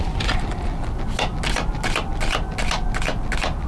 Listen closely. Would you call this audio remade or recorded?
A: recorded